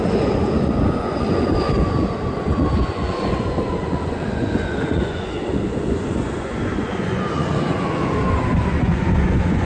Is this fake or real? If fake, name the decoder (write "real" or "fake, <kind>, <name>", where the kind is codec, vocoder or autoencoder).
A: fake, vocoder, Vocos